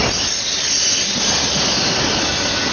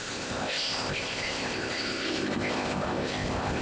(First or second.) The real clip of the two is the first